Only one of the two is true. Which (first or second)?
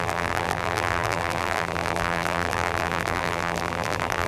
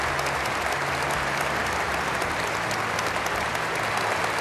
second